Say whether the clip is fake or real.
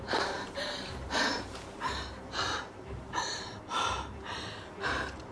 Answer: fake